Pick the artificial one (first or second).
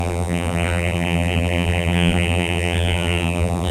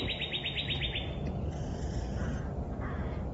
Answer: first